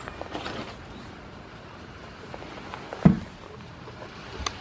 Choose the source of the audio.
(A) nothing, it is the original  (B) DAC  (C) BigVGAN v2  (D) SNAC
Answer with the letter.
A